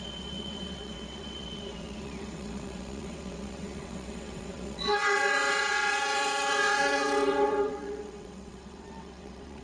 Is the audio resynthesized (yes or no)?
yes